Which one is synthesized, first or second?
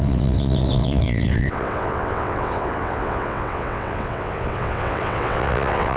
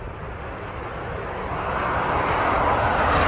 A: first